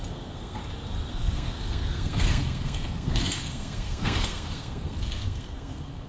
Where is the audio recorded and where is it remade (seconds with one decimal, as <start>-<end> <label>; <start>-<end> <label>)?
0.0-0.6 remade; 0.6-1.1 recorded; 1.1-6.1 remade